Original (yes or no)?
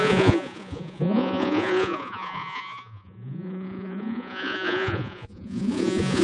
no